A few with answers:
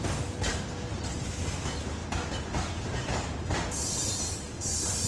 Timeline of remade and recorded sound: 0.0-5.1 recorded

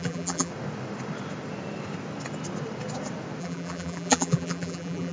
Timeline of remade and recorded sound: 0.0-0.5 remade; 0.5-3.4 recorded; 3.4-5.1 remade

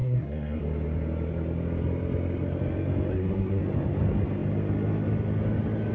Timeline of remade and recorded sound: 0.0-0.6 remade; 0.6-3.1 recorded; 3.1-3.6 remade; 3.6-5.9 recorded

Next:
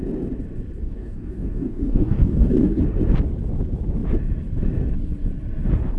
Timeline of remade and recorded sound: 0.0-0.8 recorded; 0.8-2.8 remade; 2.8-6.0 recorded